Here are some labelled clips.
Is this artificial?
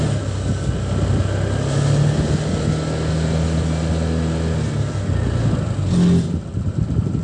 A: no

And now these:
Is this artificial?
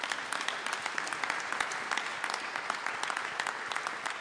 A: no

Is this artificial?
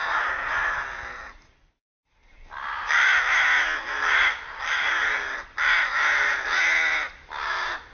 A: no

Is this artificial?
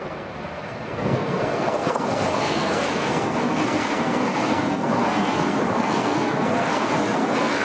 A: yes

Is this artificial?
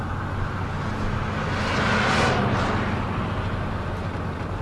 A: no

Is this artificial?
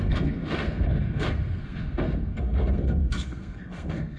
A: yes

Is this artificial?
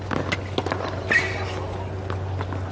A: no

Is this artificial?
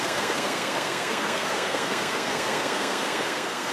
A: yes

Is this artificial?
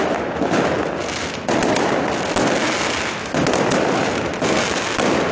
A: no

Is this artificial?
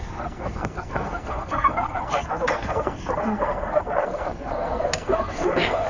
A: yes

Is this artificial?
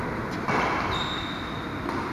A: no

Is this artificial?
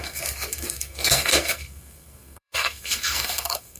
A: yes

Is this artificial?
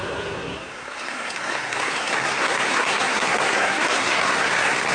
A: yes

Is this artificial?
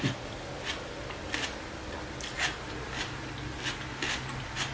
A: no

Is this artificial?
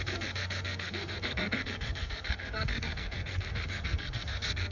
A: yes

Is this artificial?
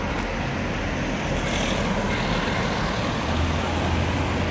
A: no